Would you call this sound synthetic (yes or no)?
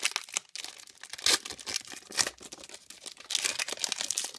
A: no